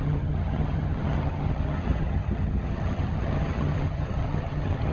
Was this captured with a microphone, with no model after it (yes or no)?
no